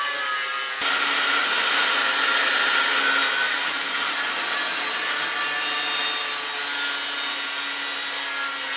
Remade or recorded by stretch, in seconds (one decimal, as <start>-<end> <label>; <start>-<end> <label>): 0.0-1.4 recorded; 1.4-2.2 remade; 2.2-8.8 recorded